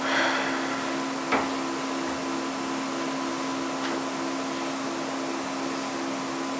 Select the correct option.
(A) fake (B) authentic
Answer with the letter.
B